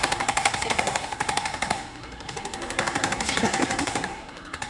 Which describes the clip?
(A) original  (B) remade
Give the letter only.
B